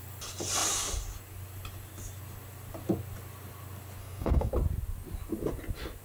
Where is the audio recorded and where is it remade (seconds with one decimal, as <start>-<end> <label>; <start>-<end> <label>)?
0.0-4.0 recorded; 4.0-4.5 remade; 4.5-6.0 recorded